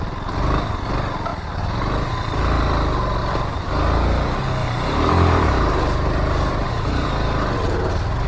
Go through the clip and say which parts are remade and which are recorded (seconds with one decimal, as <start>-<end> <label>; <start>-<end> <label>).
0.0-3.2 recorded; 3.2-3.7 remade; 3.7-4.6 recorded; 4.6-7.1 remade; 7.1-8.3 recorded